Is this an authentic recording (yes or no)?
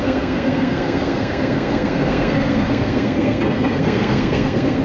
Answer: no